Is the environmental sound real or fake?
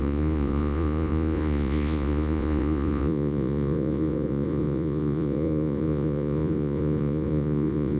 fake